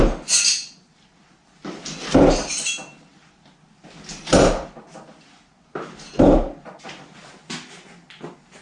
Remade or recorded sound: recorded